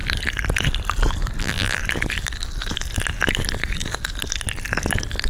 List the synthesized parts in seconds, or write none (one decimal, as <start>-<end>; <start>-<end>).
1.4-1.8